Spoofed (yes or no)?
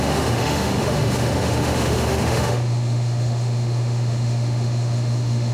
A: yes